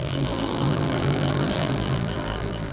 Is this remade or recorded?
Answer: remade